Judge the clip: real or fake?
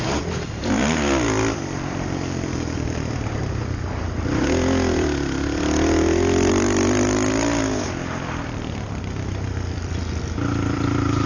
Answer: fake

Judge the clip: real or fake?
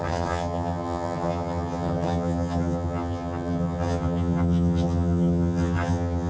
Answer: fake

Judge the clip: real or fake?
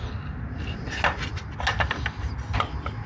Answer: real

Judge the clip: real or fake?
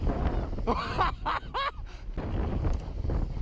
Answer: real